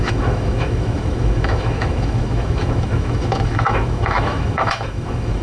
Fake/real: fake